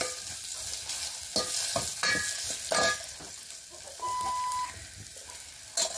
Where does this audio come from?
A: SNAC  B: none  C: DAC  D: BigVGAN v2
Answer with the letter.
B